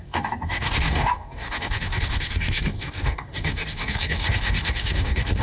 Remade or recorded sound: remade